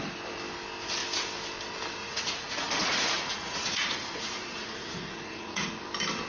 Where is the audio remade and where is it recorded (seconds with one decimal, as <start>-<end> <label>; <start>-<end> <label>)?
0.0-2.0 recorded; 2.0-5.8 remade; 5.8-6.3 recorded